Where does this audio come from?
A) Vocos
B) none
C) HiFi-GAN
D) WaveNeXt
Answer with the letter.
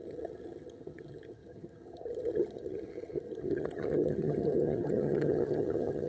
C